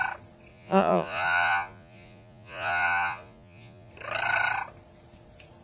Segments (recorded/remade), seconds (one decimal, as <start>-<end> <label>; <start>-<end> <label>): 0.0-0.5 recorded; 0.5-3.9 remade; 3.9-5.6 recorded